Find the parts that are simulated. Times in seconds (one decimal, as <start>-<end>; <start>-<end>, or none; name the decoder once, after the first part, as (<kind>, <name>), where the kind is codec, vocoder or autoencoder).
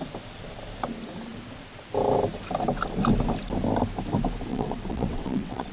4.5-5.7 (vocoder, WaveNeXt)